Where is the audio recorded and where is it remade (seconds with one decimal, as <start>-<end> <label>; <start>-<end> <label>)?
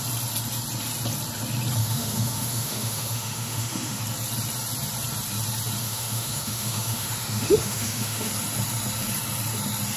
0.0-1.8 recorded; 1.8-4.0 remade; 4.0-5.8 recorded; 5.8-8.3 remade; 8.3-10.0 recorded